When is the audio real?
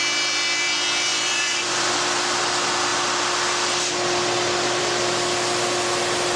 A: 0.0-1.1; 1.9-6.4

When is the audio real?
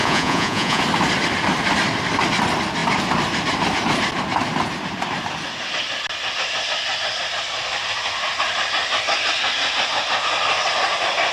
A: 0.8-11.3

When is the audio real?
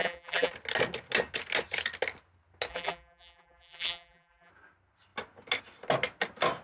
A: 0.5-2.7; 4.5-6.6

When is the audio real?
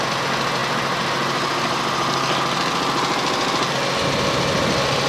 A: 0.0-5.1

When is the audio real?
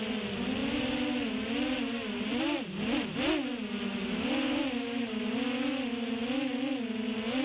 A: 0.0-7.4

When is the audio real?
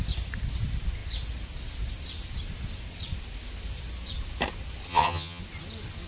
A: 0.0-4.9; 5.4-6.1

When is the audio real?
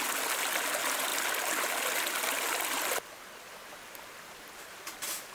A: 0.0-5.3